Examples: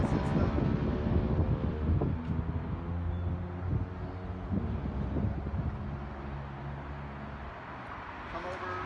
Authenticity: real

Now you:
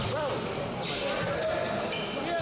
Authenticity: real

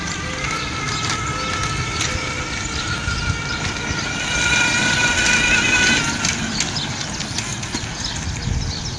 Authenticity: real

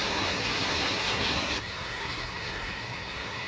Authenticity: fake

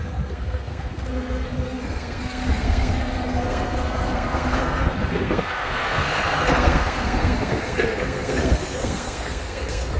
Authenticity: fake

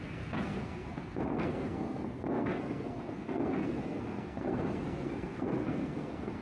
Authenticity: fake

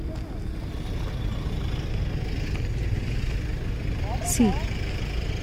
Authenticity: real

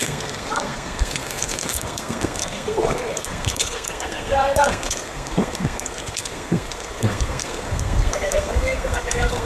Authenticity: fake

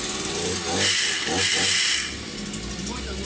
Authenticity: real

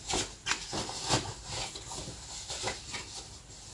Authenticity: real